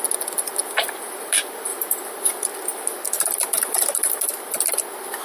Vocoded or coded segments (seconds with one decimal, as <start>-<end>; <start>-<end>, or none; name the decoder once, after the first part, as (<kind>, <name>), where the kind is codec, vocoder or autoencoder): none